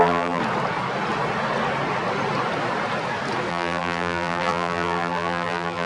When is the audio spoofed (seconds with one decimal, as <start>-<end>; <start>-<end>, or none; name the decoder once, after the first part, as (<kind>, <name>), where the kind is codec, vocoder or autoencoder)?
0.0-0.4 (vocoder, BigVGAN v2); 3.5-5.9